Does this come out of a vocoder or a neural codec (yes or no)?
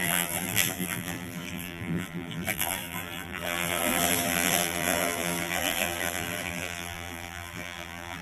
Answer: yes